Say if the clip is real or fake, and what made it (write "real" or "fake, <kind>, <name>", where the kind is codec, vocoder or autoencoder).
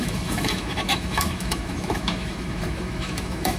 fake, autoencoder, DAC-VAE